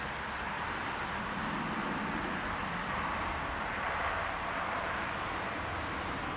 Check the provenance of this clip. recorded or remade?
recorded